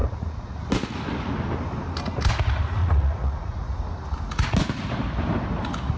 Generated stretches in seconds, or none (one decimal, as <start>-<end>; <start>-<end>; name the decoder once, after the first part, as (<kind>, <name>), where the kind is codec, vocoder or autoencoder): 0.0-0.6 (vocoder, Vocos); 2.8-3.7